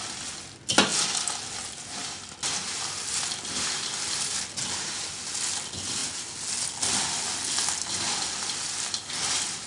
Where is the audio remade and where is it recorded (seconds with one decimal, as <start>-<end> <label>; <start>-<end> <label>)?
0.0-9.7 recorded